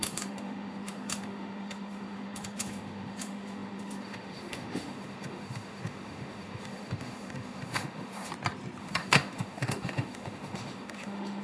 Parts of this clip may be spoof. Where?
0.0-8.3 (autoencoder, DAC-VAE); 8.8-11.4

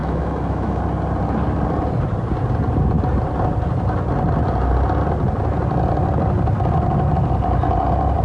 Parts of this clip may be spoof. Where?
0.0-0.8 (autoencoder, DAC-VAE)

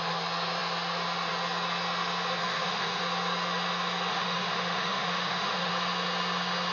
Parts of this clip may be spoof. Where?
2.4-3.0 (autoencoder, DAC-VAE); 4.1-5.7

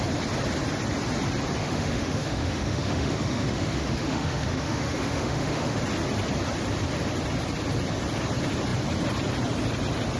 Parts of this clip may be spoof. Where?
1.6-5.8 (autoencoder, DAC-VAE)

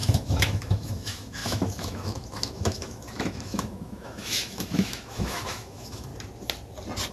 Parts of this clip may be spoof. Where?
0.0-6.1 (autoencoder, DAC-VAE)